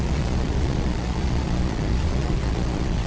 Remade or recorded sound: remade